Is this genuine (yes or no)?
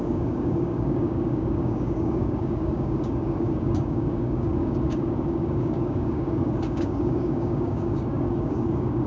no